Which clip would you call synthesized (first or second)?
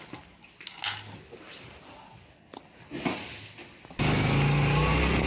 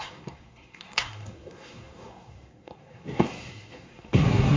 second